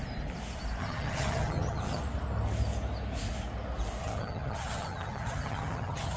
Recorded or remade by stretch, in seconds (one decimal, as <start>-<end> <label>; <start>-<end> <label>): 0.0-0.8 recorded; 0.8-2.0 remade; 2.0-4.0 recorded; 4.0-6.2 remade